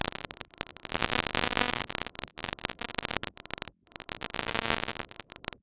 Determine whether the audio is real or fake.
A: real